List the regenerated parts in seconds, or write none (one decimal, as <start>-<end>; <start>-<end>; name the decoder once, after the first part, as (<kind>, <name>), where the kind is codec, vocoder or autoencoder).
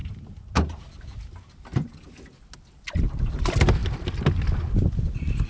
none